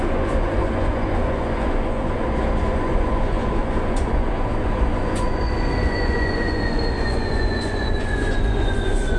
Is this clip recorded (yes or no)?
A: no